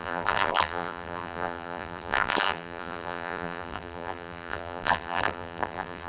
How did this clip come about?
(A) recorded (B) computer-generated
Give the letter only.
B